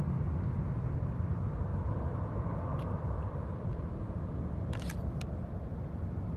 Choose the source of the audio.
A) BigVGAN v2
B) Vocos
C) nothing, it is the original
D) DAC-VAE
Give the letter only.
C